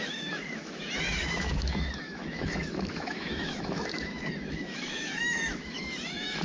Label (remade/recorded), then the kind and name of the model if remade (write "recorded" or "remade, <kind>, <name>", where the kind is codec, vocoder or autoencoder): remade, autoencoder, DAC-VAE